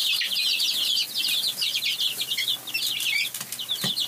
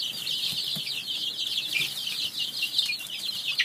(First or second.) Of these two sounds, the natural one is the first